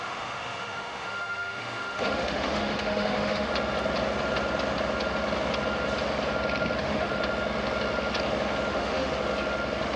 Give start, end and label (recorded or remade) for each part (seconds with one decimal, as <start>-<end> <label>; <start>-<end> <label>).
0.0-3.5 remade; 3.5-6.8 recorded; 6.8-7.2 remade; 7.2-8.7 recorded; 8.7-9.1 remade; 9.1-10.0 recorded